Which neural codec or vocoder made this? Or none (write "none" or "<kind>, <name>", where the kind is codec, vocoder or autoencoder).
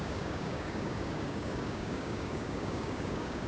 codec, DAC